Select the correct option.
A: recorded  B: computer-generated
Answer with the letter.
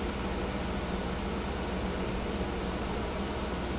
A